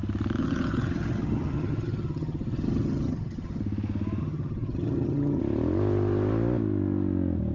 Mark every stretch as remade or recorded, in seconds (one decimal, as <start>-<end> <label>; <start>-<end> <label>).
0.0-0.4 recorded; 0.4-3.6 remade; 3.6-4.2 recorded; 4.2-5.4 remade; 5.4-7.5 recorded